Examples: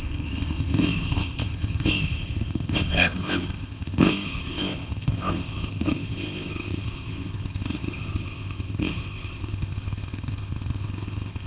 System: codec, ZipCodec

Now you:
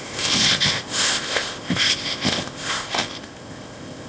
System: codec, ZipCodec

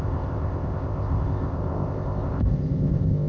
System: codec, ZipCodec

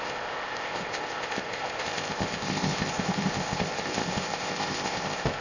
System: codec, ZipCodec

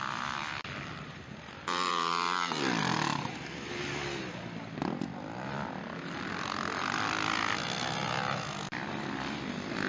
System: none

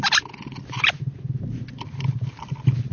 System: none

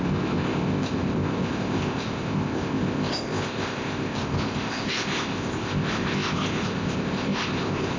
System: codec, ZipCodec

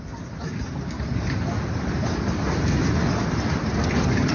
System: none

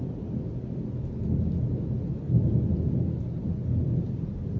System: none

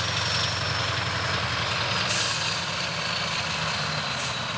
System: none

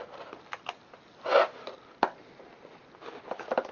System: none